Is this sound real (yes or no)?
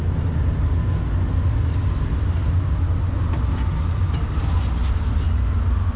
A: yes